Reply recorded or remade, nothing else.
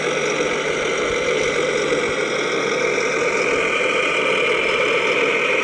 recorded